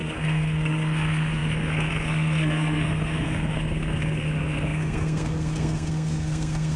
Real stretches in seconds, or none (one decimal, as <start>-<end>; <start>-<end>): none